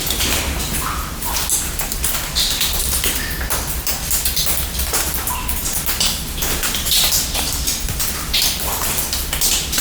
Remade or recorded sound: recorded